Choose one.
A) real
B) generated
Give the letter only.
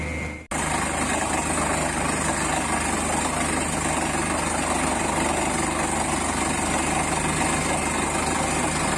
A